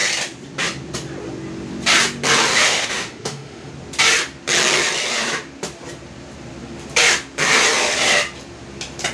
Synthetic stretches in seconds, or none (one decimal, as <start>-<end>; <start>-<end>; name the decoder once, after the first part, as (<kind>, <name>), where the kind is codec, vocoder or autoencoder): 2.5-3.7 (autoencoder, DAC-VAE)